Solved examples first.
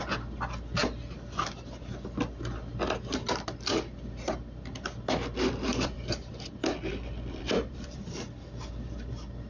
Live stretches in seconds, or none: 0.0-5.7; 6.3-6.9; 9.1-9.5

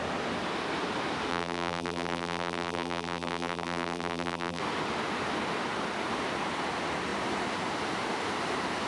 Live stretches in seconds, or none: 0.0-1.3; 4.6-8.9

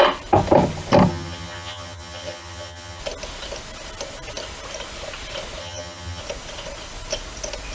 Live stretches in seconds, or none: 0.0-1.1; 3.0-5.6; 6.2-7.7